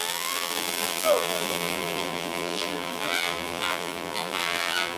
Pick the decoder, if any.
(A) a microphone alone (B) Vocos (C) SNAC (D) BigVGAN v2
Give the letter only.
D